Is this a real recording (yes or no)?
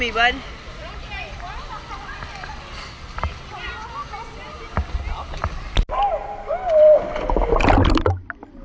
yes